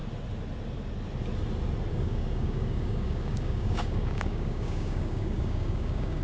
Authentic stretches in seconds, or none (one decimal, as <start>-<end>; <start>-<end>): 0.0-1.9